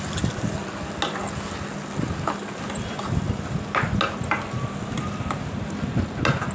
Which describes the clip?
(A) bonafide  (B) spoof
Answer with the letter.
A